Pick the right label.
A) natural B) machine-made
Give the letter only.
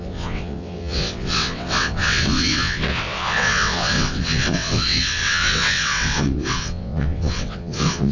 B